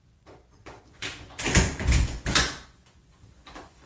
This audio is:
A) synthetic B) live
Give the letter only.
A